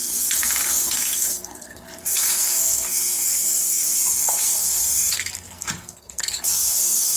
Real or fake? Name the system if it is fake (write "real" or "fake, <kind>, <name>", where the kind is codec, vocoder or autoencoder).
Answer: fake, codec, SNAC